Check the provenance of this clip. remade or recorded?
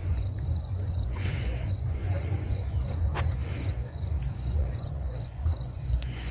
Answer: remade